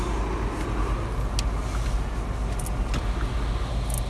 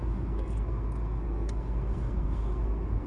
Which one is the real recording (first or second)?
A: first